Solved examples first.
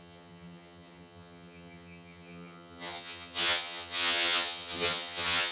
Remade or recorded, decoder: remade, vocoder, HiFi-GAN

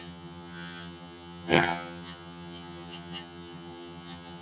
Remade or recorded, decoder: remade, vocoder, HiFi-GAN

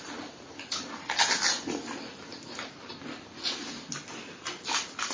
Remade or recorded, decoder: recorded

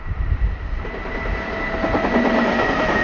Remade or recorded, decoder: recorded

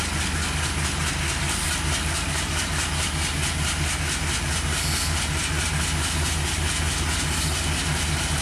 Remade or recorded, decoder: recorded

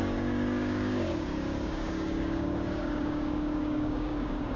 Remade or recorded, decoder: remade, codec, DAC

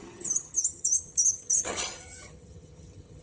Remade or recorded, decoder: remade, vocoder, HiFi-GAN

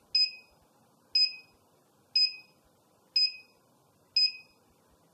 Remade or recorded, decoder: recorded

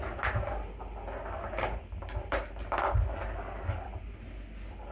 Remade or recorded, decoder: recorded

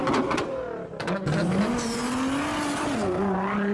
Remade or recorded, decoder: recorded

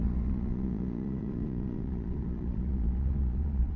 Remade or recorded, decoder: remade, vocoder, Vocos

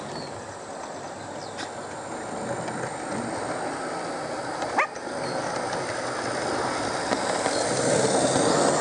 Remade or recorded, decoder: recorded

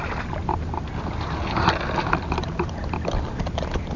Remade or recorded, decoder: recorded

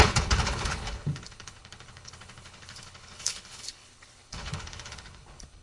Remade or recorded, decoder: remade, codec, HILCodec